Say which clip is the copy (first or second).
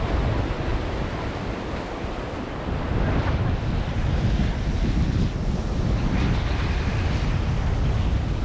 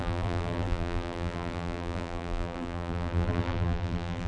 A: second